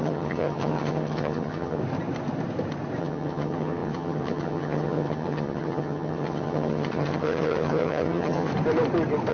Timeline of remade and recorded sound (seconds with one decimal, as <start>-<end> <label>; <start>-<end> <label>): 0.0-1.8 remade; 1.8-3.0 recorded; 3.0-8.5 remade; 8.5-9.3 recorded